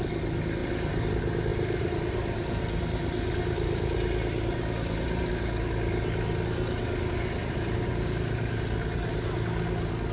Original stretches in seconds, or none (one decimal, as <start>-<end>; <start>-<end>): 0.0-0.6; 1.1-1.5; 5.3-7.4; 7.9-10.1